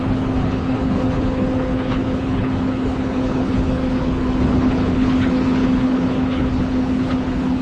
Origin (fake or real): fake